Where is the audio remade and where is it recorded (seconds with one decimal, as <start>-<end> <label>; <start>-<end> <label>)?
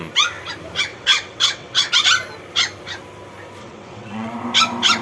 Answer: 0.0-0.9 recorded; 0.9-1.9 remade; 1.9-3.6 recorded; 3.6-4.3 remade; 4.3-5.0 recorded